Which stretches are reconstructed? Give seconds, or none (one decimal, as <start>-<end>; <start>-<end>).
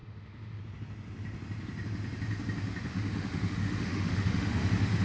0.0-0.6; 2.9-4.6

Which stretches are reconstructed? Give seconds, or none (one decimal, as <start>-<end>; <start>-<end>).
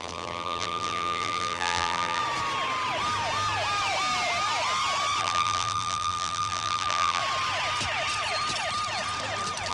0.0-2.2; 5.2-7.2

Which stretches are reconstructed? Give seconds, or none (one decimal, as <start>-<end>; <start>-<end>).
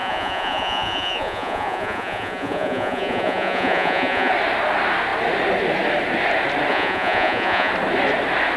0.0-4.3; 6.7-7.7